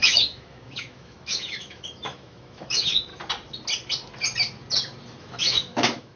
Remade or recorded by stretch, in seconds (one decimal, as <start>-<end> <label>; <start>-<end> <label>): 0.0-3.1 remade; 3.1-5.2 recorded; 5.2-6.2 remade